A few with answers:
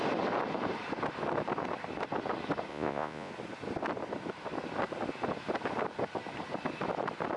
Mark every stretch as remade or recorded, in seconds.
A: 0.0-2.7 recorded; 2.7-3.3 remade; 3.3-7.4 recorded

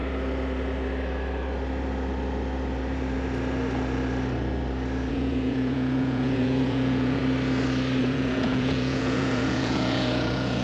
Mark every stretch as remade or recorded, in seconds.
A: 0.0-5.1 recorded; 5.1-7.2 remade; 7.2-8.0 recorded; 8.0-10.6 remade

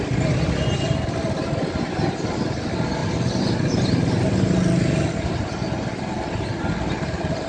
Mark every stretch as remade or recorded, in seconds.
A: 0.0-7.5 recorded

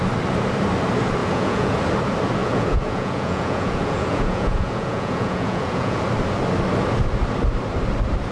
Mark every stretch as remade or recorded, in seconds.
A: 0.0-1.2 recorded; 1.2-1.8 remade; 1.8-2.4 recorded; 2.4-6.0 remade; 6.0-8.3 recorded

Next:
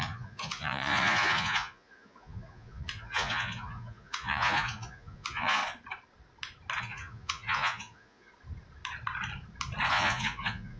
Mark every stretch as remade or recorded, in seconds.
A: 0.0-5.6 remade; 5.6-6.8 recorded; 6.8-8.3 remade; 8.3-9.9 recorded; 9.9-10.8 remade